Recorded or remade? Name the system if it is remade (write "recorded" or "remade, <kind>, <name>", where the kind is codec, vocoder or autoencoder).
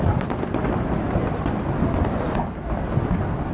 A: recorded